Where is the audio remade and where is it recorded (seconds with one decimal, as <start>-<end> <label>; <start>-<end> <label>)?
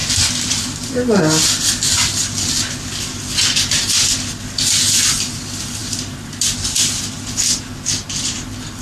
0.0-1.2 remade; 1.2-5.8 recorded; 5.8-7.1 remade; 7.1-8.8 recorded